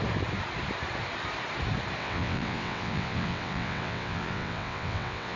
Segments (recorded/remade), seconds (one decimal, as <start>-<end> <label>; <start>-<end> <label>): 0.0-2.0 recorded; 2.0-5.4 remade

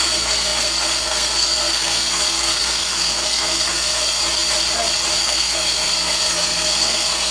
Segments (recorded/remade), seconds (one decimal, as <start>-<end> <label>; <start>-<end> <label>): 0.0-4.2 remade; 4.2-5.2 recorded; 5.2-7.3 remade

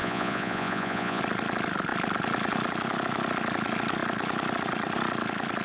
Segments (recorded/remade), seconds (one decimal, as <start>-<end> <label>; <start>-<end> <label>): 0.0-1.2 remade; 1.2-5.6 recorded

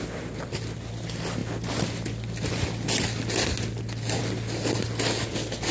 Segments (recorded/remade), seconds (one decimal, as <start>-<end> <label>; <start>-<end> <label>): 0.0-5.7 recorded

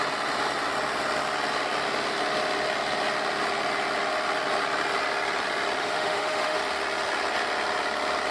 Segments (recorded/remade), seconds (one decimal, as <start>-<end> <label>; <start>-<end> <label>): 0.0-5.8 recorded; 5.8-6.6 remade; 6.6-8.3 recorded